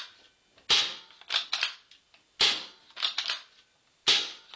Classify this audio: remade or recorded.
recorded